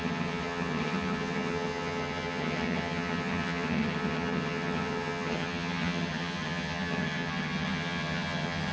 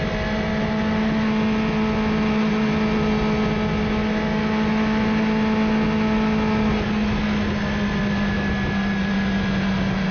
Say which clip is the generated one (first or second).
first